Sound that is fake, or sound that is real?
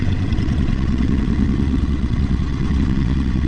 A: fake